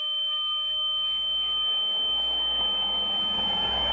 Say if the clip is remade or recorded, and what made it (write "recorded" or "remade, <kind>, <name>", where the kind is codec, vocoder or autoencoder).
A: remade, codec, DAC